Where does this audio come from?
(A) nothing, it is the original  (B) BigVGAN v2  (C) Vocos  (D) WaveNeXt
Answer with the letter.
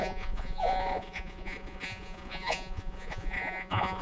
C